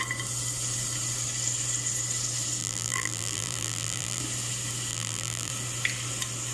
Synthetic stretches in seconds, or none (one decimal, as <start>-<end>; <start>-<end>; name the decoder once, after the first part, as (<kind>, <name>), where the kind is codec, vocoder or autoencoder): 2.6-4.2 (vocoder, BigVGAN v2); 4.9-5.5

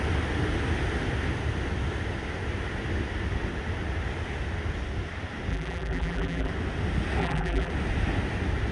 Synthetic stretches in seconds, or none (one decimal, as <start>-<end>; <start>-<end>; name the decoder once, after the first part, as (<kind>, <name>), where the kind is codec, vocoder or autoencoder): 5.5-6.5 (vocoder, BigVGAN v2); 7.2-7.7

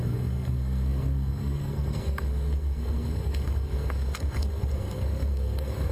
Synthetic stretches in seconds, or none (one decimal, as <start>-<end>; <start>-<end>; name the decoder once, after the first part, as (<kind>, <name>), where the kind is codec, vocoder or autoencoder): 0.0-5.9 (codec, SNAC)

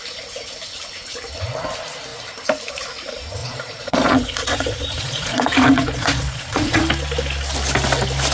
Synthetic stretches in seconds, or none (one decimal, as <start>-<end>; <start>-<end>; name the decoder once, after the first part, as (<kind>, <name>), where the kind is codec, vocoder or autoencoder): 3.4-6.8 (vocoder, Vocos)

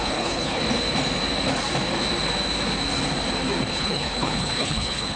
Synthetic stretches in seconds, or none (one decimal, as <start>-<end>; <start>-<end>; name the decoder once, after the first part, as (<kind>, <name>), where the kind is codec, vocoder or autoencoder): 0.0-0.6 (codec, HILCodec); 3.7-5.2

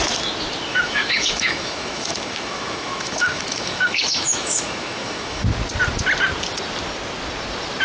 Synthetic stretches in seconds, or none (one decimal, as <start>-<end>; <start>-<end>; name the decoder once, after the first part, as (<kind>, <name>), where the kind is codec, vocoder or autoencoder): 0.7-5.4 (autoencoder, DAC-VAE)

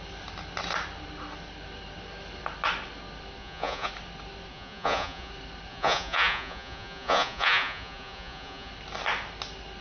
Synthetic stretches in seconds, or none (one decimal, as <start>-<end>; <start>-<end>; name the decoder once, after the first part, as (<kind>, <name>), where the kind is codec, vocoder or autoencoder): 3.4-3.9 (vocoder, Vocos); 4.5-5.3; 5.7-8.7